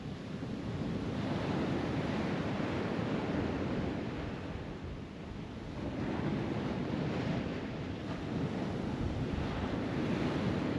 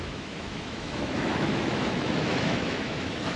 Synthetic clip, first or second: second